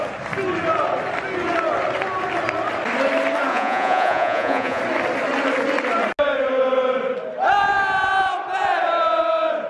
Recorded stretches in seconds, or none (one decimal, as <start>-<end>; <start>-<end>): 0.0-3.5; 4.8-9.7